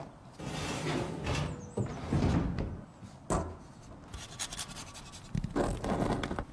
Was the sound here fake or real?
real